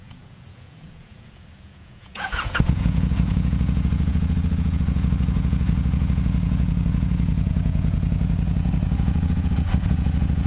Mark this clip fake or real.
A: fake